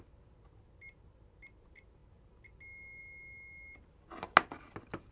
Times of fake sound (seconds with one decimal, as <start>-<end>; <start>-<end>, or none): none